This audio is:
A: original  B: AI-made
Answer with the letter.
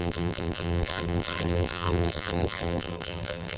B